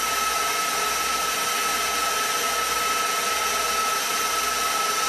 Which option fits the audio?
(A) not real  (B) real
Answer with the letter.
B